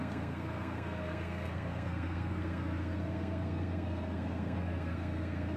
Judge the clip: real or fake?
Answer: fake